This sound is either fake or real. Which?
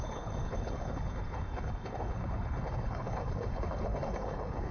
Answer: fake